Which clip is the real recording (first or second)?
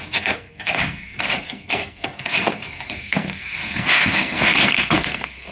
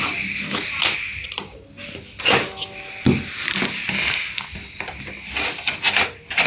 second